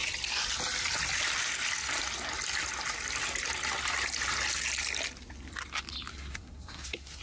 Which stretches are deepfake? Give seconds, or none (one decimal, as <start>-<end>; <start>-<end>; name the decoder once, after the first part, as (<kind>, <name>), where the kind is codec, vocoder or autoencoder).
6.1-7.2 (codec, SNAC)